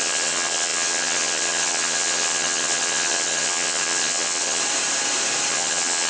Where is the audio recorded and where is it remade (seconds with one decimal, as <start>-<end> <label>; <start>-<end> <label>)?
0.0-4.6 remade; 4.6-5.5 recorded; 5.5-6.1 remade